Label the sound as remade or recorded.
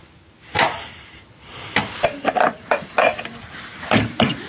recorded